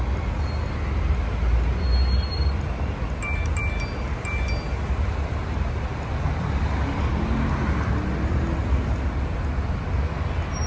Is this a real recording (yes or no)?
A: yes